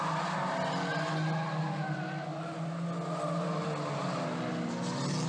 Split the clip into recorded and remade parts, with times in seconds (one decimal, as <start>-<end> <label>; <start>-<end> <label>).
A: 0.0-5.3 recorded